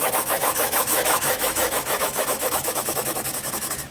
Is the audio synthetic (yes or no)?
yes